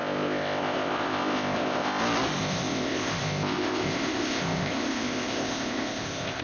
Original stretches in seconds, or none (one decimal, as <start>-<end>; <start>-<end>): 2.0-2.4